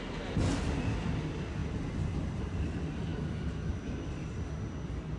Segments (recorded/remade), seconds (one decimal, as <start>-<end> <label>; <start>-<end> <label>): 0.0-5.2 recorded